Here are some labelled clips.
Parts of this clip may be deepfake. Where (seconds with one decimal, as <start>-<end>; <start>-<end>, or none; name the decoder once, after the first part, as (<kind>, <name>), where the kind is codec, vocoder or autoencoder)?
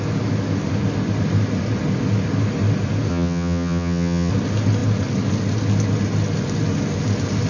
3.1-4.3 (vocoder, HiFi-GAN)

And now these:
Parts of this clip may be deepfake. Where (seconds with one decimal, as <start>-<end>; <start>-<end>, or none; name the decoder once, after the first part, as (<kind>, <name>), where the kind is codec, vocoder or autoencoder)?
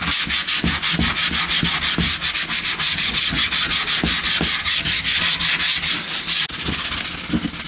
2.9-3.7 (vocoder, HiFi-GAN); 4.6-5.2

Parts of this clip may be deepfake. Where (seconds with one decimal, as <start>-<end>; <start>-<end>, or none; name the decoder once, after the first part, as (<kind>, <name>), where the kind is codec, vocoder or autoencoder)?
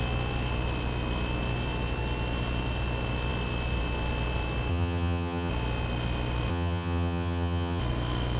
4.7-5.5 (vocoder, HiFi-GAN); 6.5-7.8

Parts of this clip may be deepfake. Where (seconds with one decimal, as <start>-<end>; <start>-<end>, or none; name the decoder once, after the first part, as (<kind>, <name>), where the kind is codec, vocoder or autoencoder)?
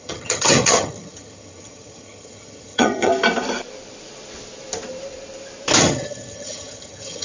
0.0-3.1 (vocoder, HiFi-GAN); 5.8-7.2